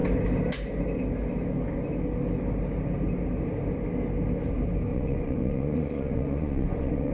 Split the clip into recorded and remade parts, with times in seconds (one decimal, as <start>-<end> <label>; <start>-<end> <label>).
0.0-4.9 recorded; 4.9-7.1 remade